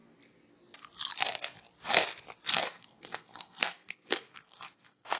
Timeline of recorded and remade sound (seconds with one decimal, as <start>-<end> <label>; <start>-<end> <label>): 0.0-2.5 recorded; 2.5-5.2 remade